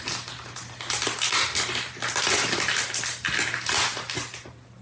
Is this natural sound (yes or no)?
yes